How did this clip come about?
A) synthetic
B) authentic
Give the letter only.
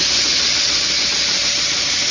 B